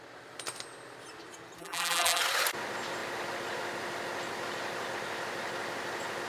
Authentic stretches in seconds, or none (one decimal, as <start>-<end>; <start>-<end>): 0.0-1.6; 2.2-6.3